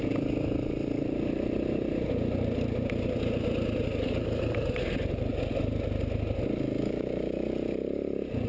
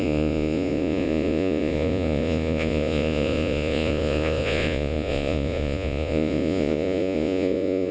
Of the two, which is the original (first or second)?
first